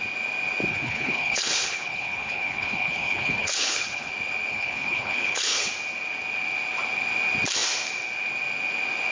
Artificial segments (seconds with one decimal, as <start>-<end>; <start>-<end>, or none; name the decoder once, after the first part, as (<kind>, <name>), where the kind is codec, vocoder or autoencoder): 0.7-4.1 (codec, HILCodec); 4.5-5.7